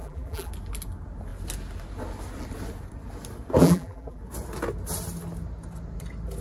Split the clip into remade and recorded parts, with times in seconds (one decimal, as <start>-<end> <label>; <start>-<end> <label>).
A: 0.0-0.5 remade; 0.5-3.6 recorded; 3.6-4.2 remade; 4.2-6.4 recorded